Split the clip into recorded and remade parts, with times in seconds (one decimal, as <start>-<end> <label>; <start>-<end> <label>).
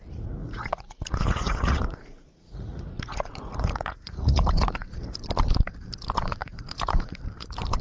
0.0-0.4 recorded; 0.4-5.1 remade; 5.1-6.4 recorded; 6.4-7.1 remade; 7.1-7.8 recorded